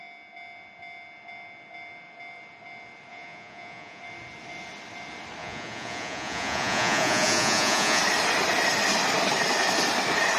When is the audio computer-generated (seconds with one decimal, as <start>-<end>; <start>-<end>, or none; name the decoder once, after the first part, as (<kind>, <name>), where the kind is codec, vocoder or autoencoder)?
3.1-4.0 (vocoder, Vocos); 5.4-8.0